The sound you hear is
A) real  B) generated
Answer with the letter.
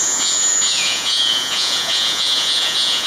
B